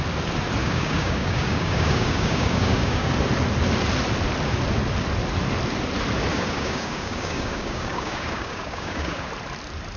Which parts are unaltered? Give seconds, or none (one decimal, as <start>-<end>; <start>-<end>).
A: 0.0-0.6; 3.1-6.3; 9.3-10.0